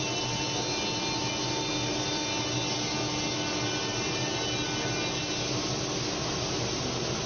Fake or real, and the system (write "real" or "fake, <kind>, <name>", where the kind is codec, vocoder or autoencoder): real